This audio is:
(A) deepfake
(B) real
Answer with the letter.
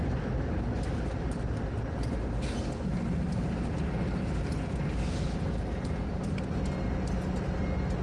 B